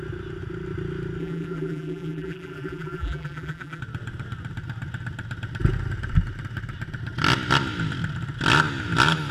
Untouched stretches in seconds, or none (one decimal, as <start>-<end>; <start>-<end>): 0.0-1.2; 3.8-9.3

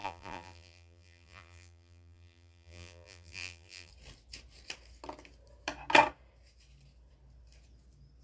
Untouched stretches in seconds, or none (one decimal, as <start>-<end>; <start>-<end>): 3.9-8.2

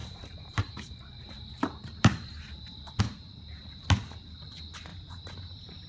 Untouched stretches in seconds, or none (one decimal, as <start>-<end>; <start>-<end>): 3.0-4.9

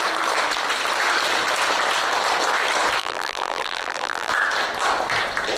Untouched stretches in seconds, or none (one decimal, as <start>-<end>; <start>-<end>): 0.0-3.0; 4.3-5.6

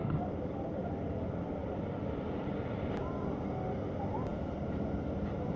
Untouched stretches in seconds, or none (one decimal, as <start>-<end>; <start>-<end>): 0.5-1.6; 3.3-4.3

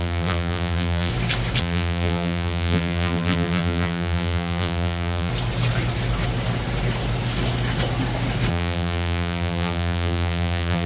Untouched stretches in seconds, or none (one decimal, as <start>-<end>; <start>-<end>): 1.1-1.6; 5.3-8.5

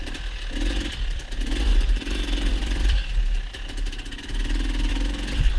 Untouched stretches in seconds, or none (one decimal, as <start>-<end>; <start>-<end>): 1.7-2.5; 3.0-4.2; 4.9-5.6